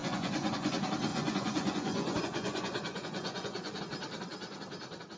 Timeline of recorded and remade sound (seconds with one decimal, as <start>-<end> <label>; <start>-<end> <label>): 0.0-0.7 remade; 0.7-1.1 recorded; 1.1-3.8 remade; 3.8-5.2 recorded